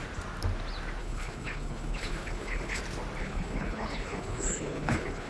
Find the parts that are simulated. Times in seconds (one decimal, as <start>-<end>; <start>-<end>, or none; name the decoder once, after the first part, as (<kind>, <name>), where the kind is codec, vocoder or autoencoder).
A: 1.0-2.8 (codec, HILCodec); 3.2-5.3